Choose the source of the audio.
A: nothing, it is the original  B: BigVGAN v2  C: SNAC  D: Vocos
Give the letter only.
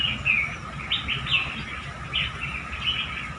A